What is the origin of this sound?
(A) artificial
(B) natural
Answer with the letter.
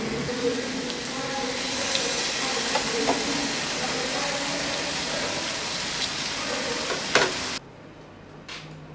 B